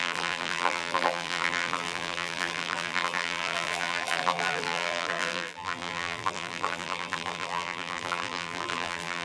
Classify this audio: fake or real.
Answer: fake